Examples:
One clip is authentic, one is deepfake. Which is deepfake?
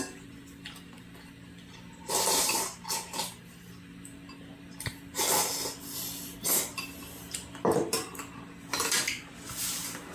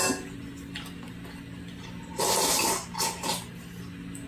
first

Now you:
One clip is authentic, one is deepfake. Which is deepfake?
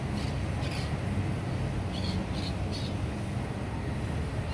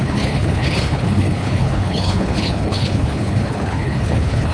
second